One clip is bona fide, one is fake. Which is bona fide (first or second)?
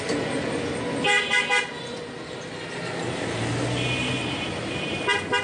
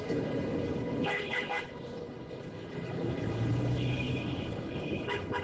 first